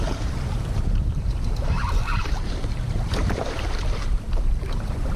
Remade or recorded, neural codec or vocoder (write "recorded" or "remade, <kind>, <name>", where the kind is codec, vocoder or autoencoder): remade, vocoder, BigVGAN v2